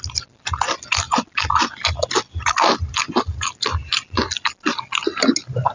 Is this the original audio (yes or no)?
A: yes